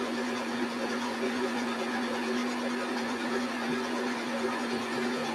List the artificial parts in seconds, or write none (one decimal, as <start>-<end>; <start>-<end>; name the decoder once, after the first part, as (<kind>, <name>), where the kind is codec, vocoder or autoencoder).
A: 0.0-2.4 (vocoder, Vocos); 2.9-5.3